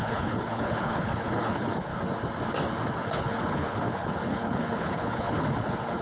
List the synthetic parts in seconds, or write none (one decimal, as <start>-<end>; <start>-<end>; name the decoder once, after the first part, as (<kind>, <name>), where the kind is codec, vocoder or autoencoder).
0.0-1.9 (codec, HILCodec); 2.9-6.0